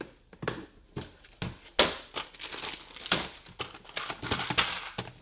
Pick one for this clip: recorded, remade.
recorded